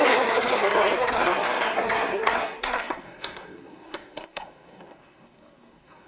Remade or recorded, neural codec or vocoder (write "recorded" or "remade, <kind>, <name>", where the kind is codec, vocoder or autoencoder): remade, codec, SNAC